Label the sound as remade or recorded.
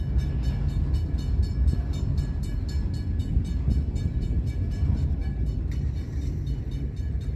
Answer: recorded